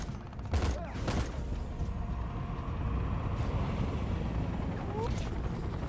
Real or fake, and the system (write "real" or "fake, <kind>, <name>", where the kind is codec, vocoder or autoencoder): real